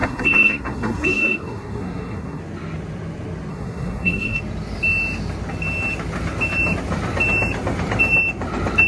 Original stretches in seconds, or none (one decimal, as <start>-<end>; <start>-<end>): 2.4-3.5; 4.4-8.9

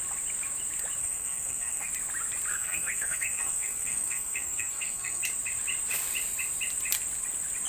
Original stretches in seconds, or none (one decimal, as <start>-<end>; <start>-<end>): 0.0-1.0; 1.9-2.5; 5.2-7.7